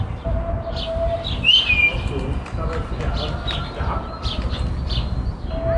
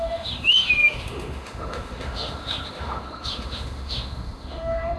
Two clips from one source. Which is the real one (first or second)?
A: first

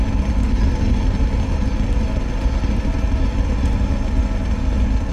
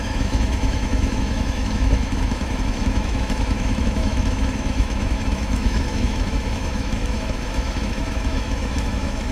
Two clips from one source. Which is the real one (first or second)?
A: first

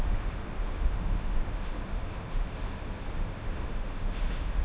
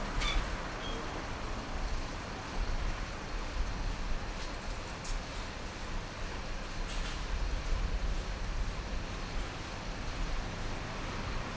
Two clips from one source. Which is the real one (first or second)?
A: second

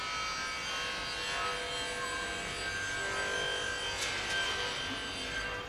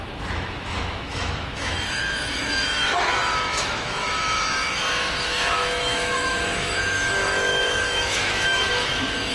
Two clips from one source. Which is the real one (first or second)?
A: first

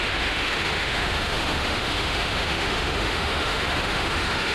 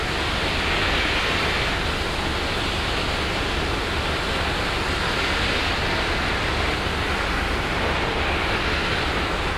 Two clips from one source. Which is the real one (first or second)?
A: second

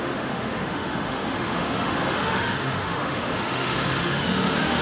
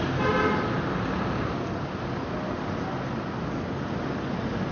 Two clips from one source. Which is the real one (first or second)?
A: second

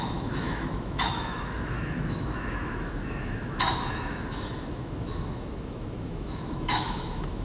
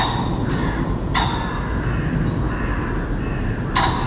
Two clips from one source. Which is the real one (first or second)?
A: second